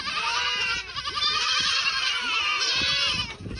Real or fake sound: fake